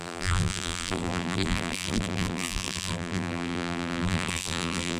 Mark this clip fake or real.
fake